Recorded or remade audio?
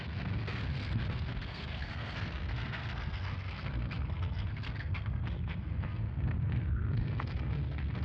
remade